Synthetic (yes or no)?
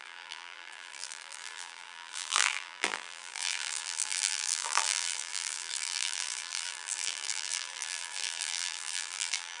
yes